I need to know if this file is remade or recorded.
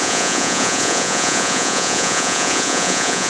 remade